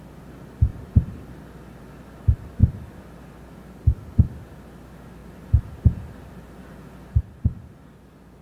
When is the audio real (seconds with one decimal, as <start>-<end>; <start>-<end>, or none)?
0.0-0.7; 1.3-5.2; 7.2-8.4